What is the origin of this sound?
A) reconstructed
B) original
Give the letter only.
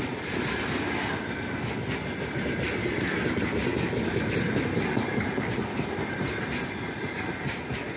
B